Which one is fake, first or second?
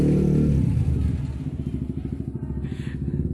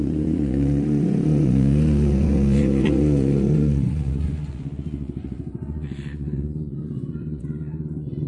second